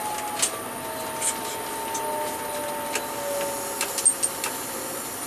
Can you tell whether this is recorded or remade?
recorded